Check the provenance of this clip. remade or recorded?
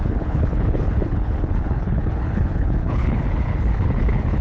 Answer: remade